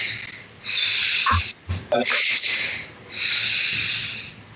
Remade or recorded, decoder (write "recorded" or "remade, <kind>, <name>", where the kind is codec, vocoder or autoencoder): recorded